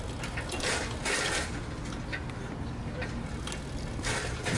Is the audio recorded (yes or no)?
yes